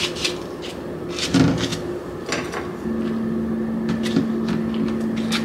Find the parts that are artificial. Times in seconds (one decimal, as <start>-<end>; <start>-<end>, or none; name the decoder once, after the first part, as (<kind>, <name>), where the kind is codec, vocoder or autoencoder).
none